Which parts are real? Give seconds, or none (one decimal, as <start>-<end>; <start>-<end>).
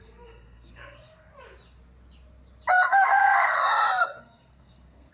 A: 1.3-2.9; 3.6-4.2